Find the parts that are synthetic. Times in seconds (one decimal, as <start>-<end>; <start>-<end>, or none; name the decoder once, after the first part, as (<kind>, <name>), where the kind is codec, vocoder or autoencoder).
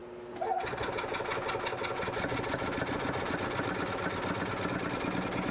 none